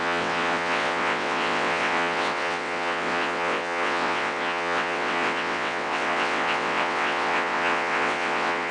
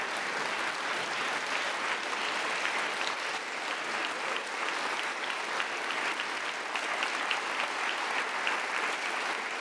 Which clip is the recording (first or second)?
second